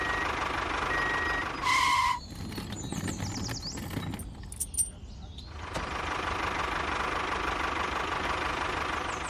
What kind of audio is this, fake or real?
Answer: real